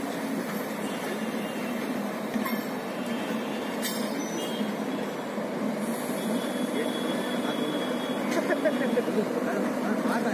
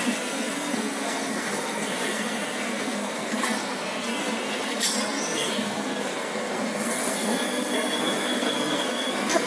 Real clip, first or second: first